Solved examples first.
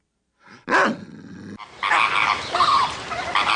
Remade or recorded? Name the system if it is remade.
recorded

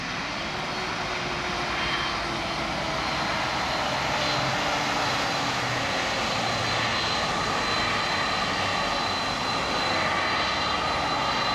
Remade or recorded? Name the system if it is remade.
recorded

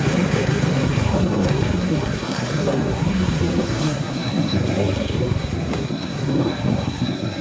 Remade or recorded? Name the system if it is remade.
remade, codec, SNAC